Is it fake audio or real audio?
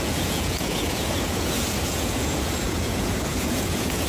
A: fake